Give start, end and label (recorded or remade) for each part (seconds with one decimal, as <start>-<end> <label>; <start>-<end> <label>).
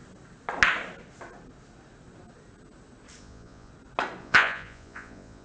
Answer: 0.0-3.2 recorded; 3.2-3.7 remade; 3.7-4.2 recorded; 4.2-5.4 remade